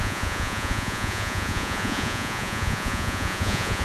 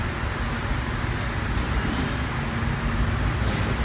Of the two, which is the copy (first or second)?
first